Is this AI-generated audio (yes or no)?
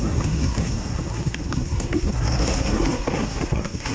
yes